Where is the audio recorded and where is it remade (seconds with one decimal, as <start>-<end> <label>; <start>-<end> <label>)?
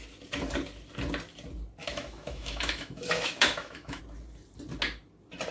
0.0-1.8 recorded; 1.8-4.0 remade; 4.0-5.5 recorded